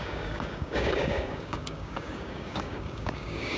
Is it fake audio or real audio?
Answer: fake